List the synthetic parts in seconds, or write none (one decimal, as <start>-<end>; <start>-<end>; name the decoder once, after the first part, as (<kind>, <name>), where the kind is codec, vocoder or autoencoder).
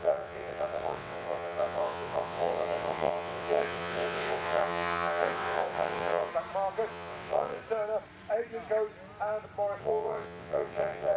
0.0-6.3 (vocoder, WaveNeXt); 6.9-7.6; 9.8-11.2